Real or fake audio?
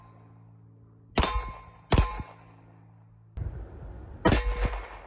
real